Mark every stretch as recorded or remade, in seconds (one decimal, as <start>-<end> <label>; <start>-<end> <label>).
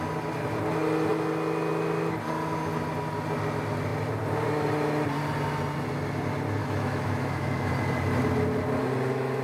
0.0-6.6 recorded; 6.6-7.7 remade; 7.7-9.4 recorded